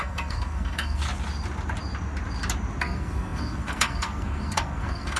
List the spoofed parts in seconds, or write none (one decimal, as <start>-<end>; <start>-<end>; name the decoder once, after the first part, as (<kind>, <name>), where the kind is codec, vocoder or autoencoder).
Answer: 0.0-1.0 (codec, SNAC); 2.8-5.2